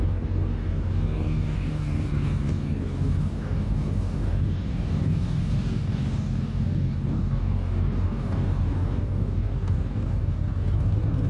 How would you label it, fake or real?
fake